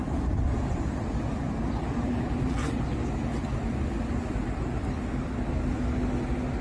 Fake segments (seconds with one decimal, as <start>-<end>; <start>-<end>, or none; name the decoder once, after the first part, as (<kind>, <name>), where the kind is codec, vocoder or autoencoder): 1.6-2.6 (vocoder, BigVGAN v2)

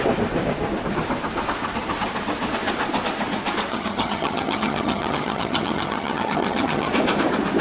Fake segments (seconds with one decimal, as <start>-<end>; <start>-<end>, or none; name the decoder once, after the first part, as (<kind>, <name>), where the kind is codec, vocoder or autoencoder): 3.7-6.9 (vocoder, HiFi-GAN)

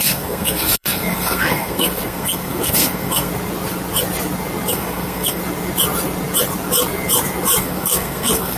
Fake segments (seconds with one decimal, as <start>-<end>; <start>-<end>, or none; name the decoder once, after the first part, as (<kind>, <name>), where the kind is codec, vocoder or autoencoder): 0.0-3.3 (codec, SNAC); 4.7-5.4; 7.6-8.6

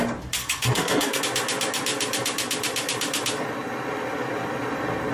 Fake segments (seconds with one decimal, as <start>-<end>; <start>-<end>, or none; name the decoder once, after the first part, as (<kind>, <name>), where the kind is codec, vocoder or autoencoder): 0.4-1.2 (codec, SNAC)